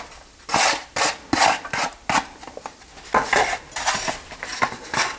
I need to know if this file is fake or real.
real